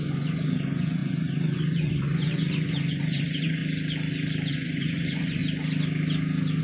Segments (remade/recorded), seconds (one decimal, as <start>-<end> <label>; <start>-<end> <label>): 0.0-3.6 remade; 3.6-4.5 recorded; 4.5-5.4 remade; 5.4-6.6 recorded